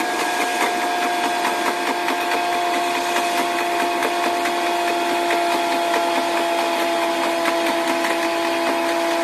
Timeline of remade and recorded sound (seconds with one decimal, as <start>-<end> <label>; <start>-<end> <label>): 0.0-9.2 recorded